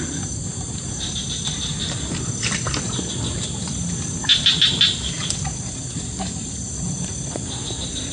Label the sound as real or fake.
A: real